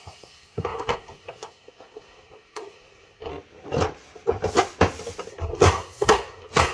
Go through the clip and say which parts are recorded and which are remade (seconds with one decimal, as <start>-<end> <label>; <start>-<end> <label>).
0.0-3.3 remade; 3.3-5.3 recorded; 5.3-6.7 remade